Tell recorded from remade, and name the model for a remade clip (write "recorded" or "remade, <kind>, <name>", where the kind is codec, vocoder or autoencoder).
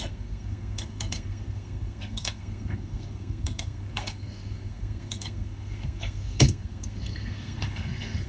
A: remade, codec, SNAC